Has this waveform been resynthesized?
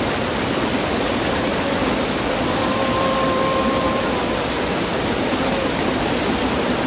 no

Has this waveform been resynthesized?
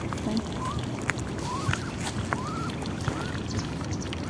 no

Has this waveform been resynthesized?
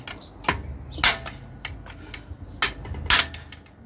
no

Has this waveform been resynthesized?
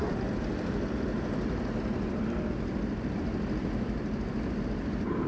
no